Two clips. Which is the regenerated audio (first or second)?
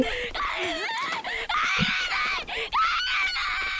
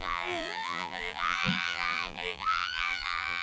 second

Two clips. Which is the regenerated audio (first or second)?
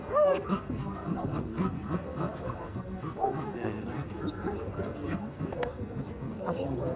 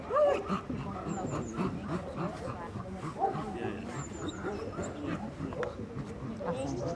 first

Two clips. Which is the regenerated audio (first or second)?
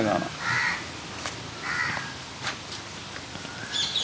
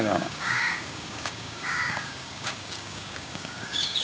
second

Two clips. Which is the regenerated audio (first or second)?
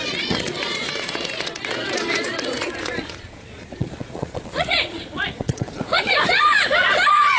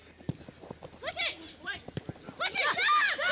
first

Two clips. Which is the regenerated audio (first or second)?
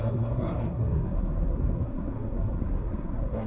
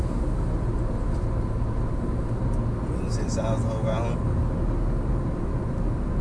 first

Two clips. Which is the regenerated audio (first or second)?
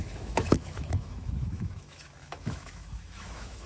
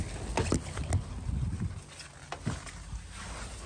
first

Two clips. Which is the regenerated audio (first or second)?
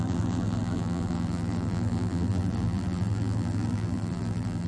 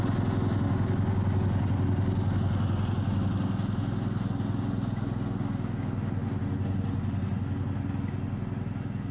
first